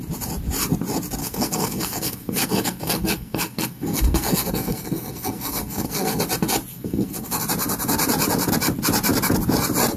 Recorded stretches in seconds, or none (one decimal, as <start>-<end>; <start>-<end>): 0.0-1.2; 6.2-6.7; 7.4-10.0